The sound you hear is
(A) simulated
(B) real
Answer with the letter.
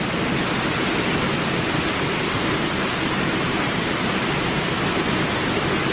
B